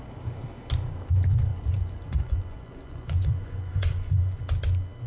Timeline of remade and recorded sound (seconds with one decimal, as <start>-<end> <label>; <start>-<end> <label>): 0.0-1.5 recorded; 1.5-4.4 remade; 4.4-5.1 recorded